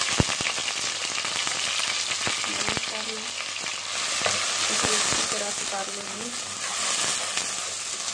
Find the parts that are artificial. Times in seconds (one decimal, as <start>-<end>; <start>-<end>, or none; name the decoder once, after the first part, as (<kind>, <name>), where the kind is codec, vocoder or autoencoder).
none